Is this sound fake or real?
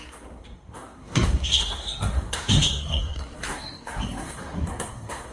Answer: fake